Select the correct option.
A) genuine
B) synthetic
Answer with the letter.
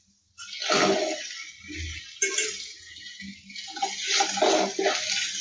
A